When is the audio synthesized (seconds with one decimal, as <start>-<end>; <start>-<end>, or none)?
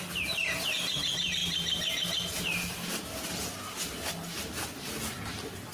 none